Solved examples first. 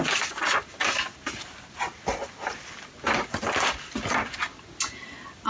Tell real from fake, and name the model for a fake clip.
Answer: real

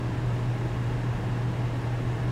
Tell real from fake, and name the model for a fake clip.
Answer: real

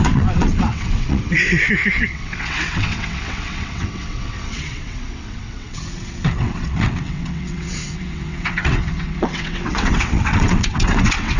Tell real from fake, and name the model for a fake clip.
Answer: fake, vocoder, WaveNeXt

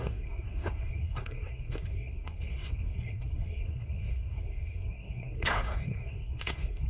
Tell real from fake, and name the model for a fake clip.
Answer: fake, codec, SNAC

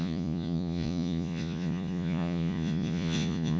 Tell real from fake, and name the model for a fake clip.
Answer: fake, vocoder, Vocos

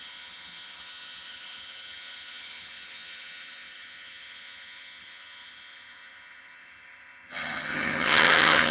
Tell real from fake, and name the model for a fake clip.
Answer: fake, vocoder, HiFi-GAN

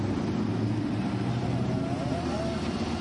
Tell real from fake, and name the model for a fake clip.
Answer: real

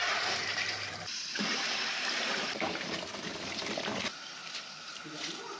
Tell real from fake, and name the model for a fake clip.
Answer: fake, vocoder, BigVGAN v2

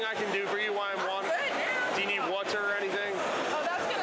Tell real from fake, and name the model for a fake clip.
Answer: real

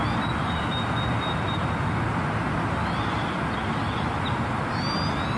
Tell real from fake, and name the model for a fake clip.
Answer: real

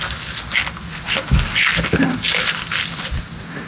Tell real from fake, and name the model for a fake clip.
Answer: real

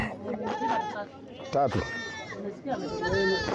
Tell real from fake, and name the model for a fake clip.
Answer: real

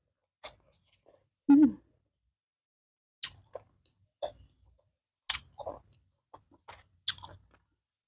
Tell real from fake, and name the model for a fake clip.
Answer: real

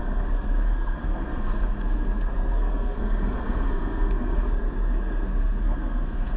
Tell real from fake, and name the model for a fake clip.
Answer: fake, codec, SNAC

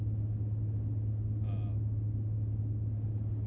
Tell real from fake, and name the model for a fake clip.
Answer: real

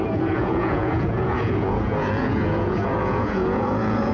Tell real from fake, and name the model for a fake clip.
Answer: fake, vocoder, Vocos